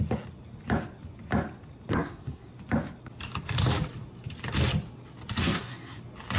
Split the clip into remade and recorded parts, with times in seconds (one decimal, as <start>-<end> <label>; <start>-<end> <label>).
0.0-1.9 recorded; 1.9-2.5 remade; 2.5-5.4 recorded; 5.4-6.0 remade; 6.0-6.4 recorded